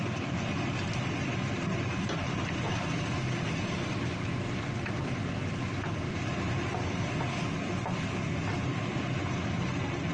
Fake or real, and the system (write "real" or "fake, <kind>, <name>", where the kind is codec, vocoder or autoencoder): real